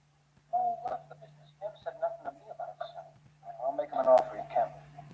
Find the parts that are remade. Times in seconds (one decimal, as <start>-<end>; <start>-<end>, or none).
none